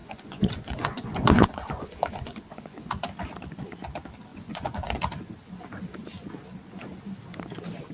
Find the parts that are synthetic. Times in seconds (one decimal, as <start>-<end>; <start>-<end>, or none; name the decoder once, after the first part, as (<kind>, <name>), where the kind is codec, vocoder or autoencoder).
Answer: 0.0-3.0 (vocoder, Vocos); 4.3-5.0

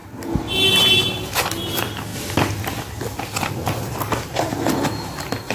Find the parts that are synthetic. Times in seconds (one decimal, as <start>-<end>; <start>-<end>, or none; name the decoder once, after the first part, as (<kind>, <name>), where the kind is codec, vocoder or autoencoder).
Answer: none

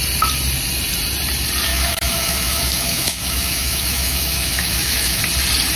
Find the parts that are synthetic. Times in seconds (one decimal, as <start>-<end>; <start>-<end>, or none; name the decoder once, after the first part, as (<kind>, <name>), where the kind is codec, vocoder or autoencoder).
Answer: 1.7-5.2 (autoencoder, DAC-VAE)

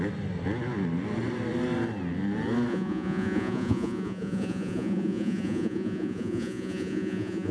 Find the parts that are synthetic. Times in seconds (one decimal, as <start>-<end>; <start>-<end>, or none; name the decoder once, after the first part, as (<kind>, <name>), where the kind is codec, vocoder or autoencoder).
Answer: 2.7-7.5 (vocoder, Vocos)

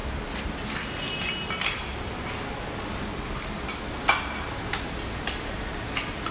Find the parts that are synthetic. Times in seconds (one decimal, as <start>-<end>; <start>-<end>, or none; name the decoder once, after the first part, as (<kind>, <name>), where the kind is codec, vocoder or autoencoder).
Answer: none